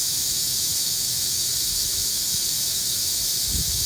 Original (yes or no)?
no